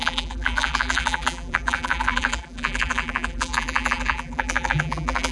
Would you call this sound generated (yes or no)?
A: yes